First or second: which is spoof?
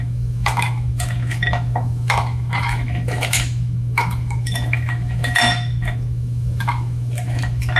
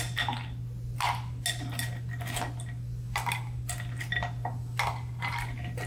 first